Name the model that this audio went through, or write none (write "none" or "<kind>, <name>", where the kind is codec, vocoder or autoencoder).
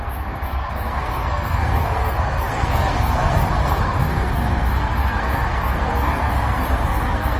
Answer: codec, SNAC